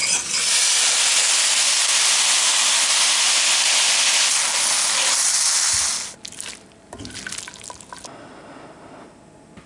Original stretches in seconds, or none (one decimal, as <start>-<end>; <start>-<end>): 0.0-9.7

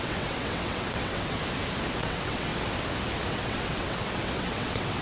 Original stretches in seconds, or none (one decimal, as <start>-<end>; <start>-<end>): 1.4-1.9; 2.5-3.3